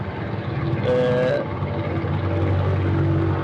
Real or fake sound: real